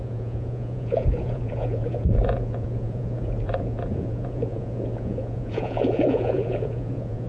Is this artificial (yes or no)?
yes